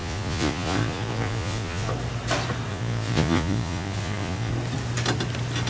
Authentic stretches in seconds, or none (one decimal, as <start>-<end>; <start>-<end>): 1.9-2.7; 4.5-5.7

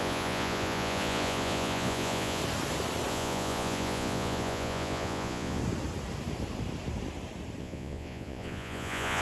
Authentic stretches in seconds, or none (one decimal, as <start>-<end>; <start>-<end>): 2.4-3.1; 5.6-7.6